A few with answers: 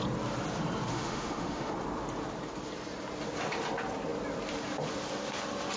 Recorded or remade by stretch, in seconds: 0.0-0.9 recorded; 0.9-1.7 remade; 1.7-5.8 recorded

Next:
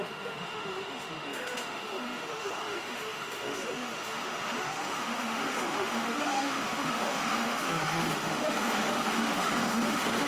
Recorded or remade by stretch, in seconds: 0.0-10.3 remade

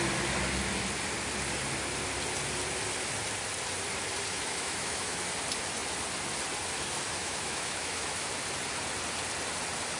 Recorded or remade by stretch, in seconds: 0.0-4.3 recorded; 4.3-5.2 remade; 5.2-7.2 recorded; 7.2-8.3 remade; 8.3-10.0 recorded